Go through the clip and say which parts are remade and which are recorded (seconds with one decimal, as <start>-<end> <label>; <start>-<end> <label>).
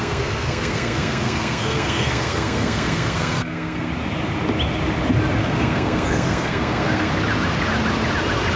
0.0-3.9 remade; 3.9-5.4 recorded; 5.4-7.1 remade; 7.1-8.6 recorded